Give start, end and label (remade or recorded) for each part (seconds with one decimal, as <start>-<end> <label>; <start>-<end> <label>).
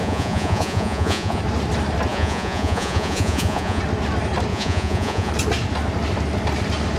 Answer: 0.0-1.4 remade; 1.4-2.1 recorded; 2.1-3.8 remade; 3.8-4.5 recorded; 4.5-5.3 remade; 5.3-7.0 recorded